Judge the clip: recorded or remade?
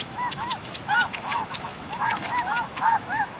remade